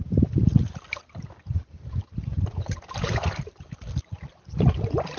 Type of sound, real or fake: real